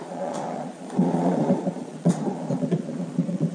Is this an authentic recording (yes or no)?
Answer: no